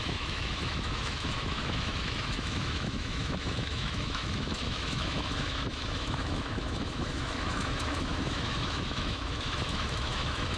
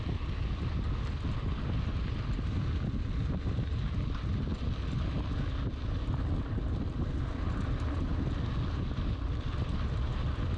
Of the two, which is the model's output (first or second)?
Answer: first